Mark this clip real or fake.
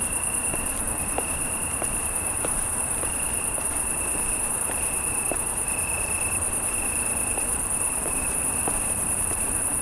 fake